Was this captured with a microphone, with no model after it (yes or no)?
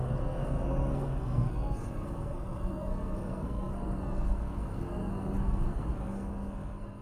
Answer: no